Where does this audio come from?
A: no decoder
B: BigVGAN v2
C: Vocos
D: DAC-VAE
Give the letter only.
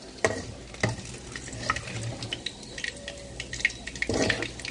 A